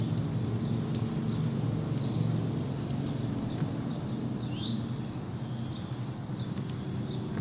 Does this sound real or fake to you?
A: real